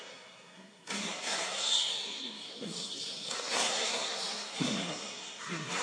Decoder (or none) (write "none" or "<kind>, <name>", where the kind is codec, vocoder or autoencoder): codec, SNAC